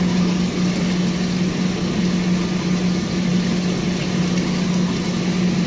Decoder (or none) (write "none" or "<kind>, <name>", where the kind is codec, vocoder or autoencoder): none